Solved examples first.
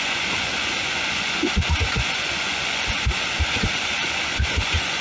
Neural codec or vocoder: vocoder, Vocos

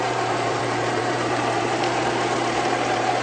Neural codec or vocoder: vocoder, BigVGAN v2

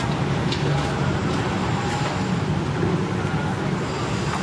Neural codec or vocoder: none